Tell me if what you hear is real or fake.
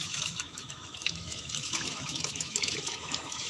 fake